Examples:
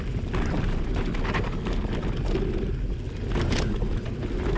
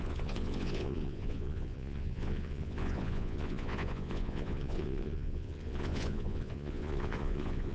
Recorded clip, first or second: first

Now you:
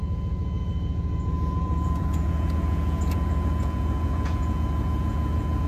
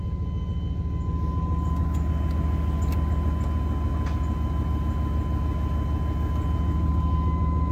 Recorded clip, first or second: second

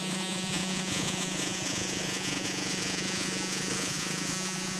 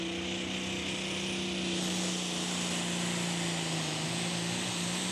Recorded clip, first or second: second